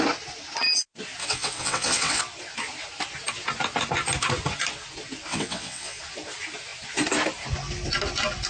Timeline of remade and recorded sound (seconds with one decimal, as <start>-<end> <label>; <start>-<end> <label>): 0.0-1.2 recorded; 1.2-2.2 remade; 2.2-5.3 recorded; 5.3-6.0 remade; 6.0-8.5 recorded